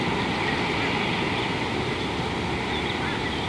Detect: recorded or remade recorded